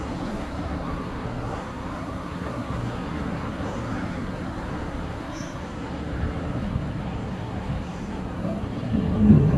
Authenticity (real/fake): fake